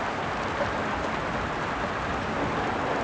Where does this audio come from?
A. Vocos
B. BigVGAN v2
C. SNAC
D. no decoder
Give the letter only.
D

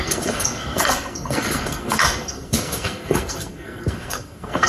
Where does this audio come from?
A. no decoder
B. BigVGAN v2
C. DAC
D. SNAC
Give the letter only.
D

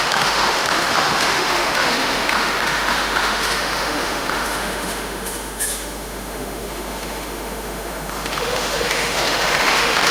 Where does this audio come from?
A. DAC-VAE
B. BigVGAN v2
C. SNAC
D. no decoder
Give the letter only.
A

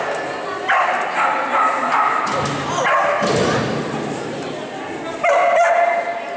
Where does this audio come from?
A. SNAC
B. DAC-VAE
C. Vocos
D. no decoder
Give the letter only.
D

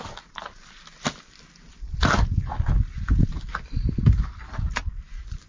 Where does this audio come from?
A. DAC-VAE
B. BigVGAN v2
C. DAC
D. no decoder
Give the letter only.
D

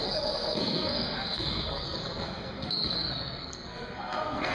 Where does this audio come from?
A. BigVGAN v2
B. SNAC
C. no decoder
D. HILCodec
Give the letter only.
B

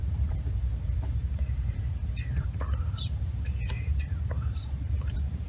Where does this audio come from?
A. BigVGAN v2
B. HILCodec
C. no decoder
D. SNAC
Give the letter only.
A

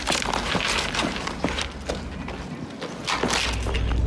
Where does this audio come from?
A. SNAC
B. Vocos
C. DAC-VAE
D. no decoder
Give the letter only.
D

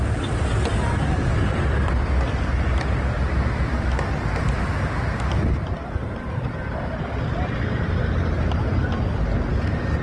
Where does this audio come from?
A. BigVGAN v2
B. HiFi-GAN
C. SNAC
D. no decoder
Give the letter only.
D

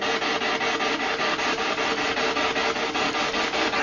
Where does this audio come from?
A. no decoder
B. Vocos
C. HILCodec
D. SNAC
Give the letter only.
A